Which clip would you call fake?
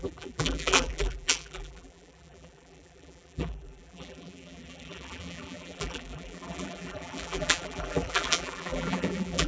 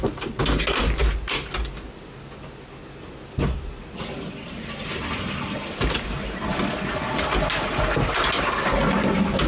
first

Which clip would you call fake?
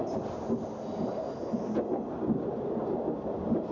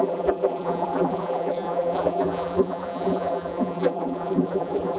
second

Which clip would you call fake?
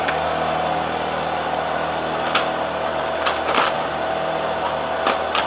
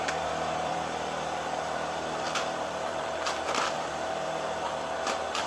second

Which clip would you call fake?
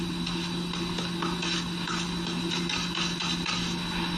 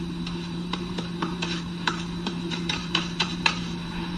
second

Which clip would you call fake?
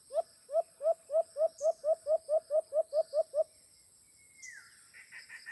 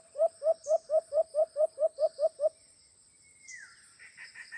second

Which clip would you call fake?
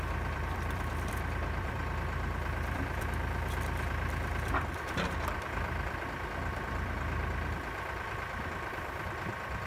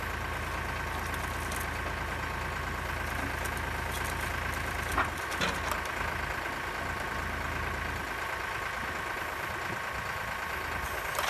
first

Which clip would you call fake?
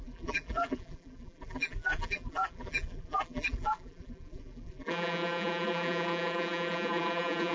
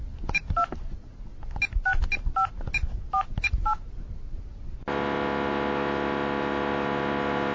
first